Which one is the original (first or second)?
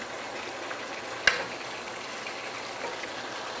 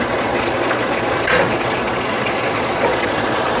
first